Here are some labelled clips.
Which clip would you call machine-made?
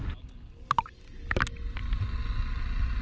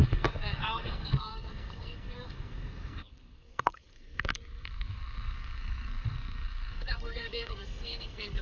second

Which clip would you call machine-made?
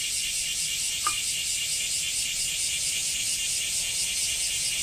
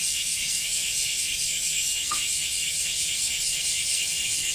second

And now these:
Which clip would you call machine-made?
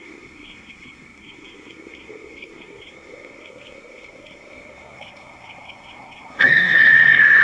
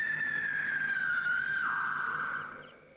first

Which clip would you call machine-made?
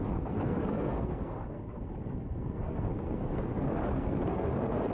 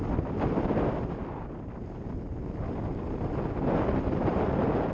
first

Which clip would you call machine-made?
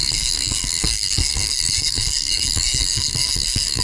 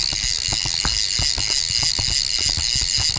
first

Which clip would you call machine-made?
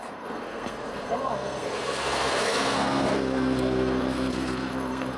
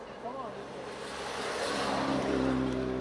first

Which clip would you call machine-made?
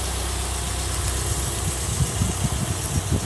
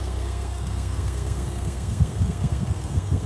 second